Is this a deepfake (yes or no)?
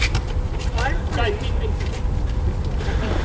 no